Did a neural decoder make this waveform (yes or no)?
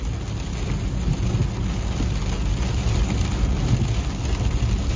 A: no